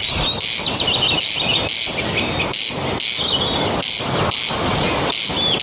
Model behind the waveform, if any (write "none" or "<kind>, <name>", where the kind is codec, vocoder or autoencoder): none